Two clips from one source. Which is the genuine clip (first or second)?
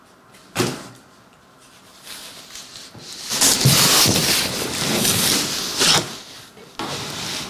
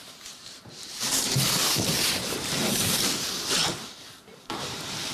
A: first